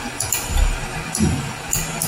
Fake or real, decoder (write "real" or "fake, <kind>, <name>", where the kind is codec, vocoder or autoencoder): real